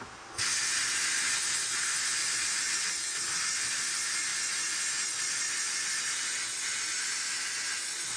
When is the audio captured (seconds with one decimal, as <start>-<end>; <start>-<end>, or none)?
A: 0.0-8.2